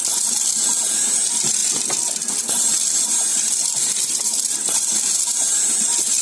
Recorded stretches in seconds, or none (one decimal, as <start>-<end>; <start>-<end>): 0.0-3.3; 5.0-6.2